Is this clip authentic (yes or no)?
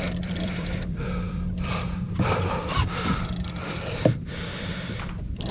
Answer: no